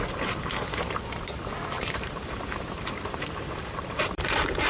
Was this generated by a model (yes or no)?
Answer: yes